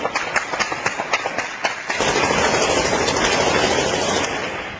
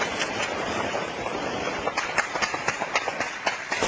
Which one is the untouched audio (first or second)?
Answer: first